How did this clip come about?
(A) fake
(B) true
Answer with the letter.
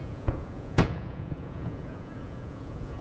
A